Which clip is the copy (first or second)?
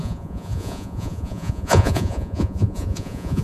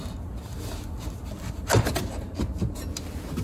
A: first